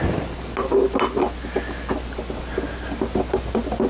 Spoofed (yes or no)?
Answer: no